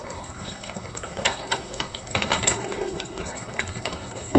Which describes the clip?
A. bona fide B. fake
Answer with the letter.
B